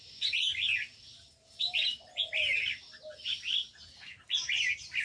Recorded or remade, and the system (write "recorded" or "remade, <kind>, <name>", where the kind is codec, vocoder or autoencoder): recorded